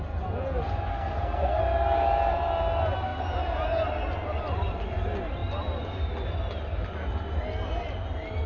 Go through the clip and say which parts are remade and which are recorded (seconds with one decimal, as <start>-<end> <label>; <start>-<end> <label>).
0.0-0.9 recorded; 0.9-1.6 remade; 1.6-8.5 recorded